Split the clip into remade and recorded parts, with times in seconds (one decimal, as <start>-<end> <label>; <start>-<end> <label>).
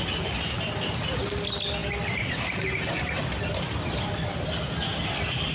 0.0-5.5 recorded